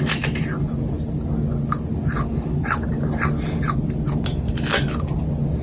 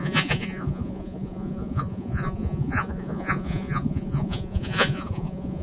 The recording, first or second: first